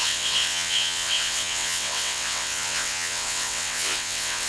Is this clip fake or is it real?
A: fake